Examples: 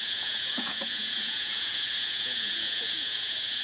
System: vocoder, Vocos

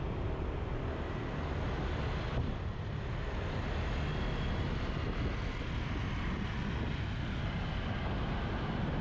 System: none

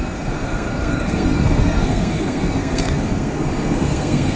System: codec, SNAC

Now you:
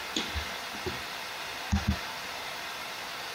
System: vocoder, BigVGAN v2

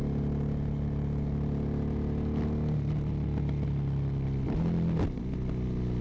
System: none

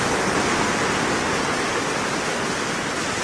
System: none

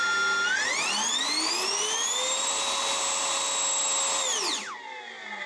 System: none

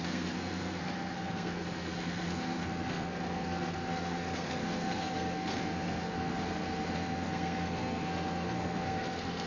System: codec, SNAC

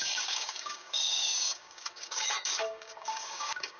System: codec, DAC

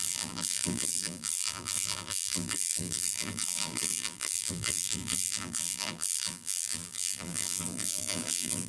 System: vocoder, BigVGAN v2